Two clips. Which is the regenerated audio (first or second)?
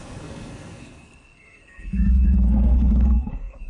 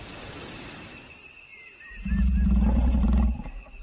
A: first